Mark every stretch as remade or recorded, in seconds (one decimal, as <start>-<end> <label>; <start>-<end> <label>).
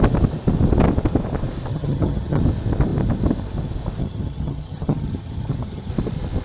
0.0-1.7 recorded; 1.7-2.4 remade; 2.4-4.0 recorded; 4.0-5.9 remade; 5.9-6.4 recorded